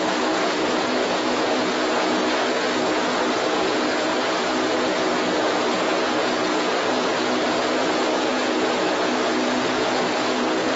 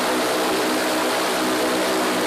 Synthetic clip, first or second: first